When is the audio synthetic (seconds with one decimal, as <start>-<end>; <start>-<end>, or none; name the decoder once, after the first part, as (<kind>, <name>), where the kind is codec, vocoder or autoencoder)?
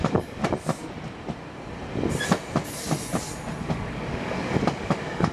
0.0-0.4 (codec, DAC); 3.6-5.3